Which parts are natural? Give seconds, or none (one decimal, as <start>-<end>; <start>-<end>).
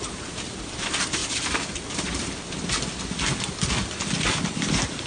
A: 0.0-1.2; 2.7-5.1